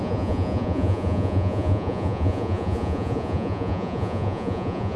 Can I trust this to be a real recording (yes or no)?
no